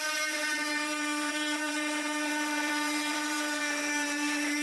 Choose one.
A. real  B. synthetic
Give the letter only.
B